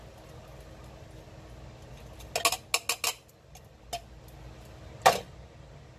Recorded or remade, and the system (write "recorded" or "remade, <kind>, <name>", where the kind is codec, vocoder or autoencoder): recorded